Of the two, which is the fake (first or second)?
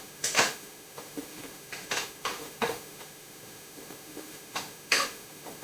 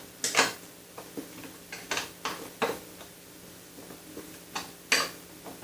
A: first